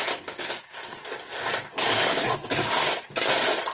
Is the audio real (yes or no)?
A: yes